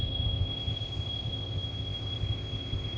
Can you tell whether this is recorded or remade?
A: remade